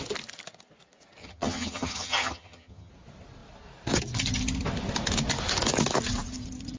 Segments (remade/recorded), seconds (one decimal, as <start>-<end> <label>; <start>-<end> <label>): 0.0-1.2 recorded; 1.2-2.9 remade; 2.9-6.8 recorded